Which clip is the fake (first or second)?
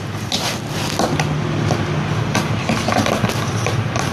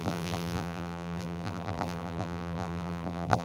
second